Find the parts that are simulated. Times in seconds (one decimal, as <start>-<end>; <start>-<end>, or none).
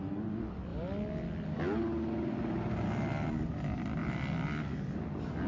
none